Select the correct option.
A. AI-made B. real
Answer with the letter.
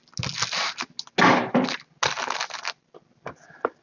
B